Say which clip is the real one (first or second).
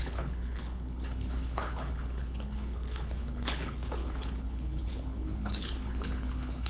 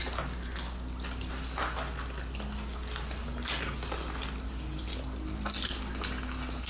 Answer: second